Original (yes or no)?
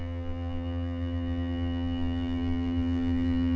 no